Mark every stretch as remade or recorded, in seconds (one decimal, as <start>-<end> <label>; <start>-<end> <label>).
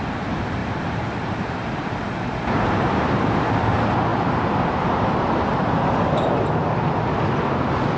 0.0-0.6 recorded; 0.6-3.6 remade; 3.6-4.1 recorded; 4.1-5.9 remade; 5.9-8.0 recorded